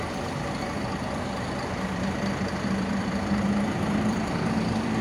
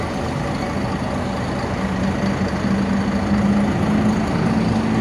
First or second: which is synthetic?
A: first